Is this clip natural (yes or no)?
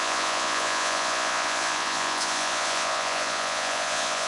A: no